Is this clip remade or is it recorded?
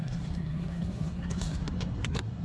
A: remade